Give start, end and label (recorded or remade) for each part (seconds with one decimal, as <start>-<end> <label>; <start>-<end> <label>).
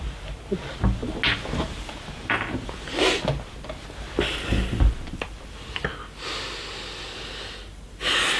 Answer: 0.0-8.4 recorded